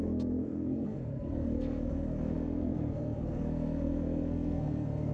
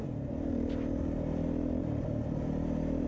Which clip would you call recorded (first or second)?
second